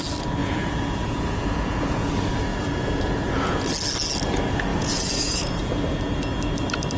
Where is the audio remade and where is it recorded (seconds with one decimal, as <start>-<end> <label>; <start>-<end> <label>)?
0.0-0.4 recorded; 0.4-2.1 remade; 2.1-2.5 recorded; 2.5-3.7 remade; 3.7-4.7 recorded; 4.7-5.7 remade; 5.7-7.0 recorded